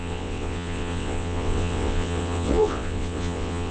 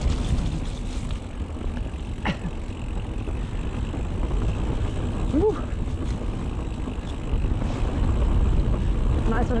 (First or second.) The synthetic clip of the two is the first